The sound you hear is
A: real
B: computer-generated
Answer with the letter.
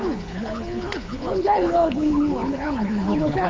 B